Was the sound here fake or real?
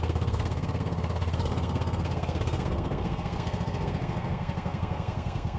fake